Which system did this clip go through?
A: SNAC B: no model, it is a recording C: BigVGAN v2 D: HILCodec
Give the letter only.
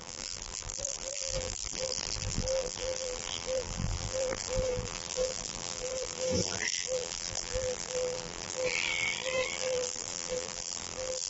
C